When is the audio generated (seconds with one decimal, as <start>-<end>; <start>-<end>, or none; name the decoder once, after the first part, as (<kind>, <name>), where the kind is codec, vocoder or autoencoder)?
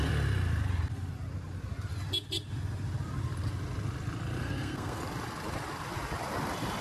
4.4-5.0 (codec, SNAC)